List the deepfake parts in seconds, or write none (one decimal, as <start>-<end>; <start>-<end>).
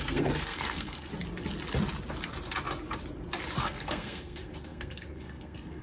0.0-1.1; 3.6-5.8